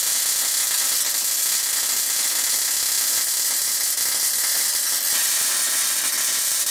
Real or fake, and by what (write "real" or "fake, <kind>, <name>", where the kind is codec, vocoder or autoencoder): real